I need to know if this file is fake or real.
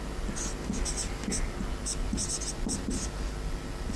real